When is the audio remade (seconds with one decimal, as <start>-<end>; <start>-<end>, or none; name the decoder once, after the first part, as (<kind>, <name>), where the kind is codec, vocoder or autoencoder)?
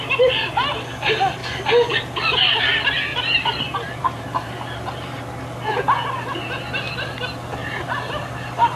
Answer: 3.1-5.2 (vocoder, BigVGAN v2); 7.6-8.8